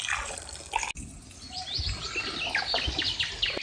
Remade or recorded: recorded